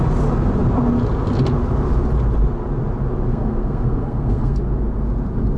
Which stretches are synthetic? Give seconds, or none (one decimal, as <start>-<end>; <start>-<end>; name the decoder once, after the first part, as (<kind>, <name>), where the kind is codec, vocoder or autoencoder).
3.3-4.6 (codec, SNAC)